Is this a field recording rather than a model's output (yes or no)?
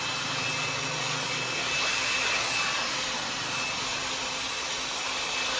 yes